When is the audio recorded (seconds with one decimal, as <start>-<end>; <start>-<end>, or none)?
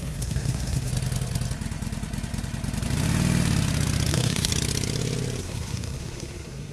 0.9-4.1; 4.5-5.4